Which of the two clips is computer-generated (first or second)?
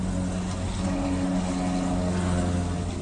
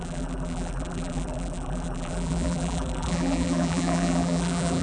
second